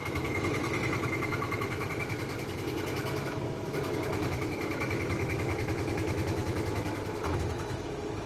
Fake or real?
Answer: fake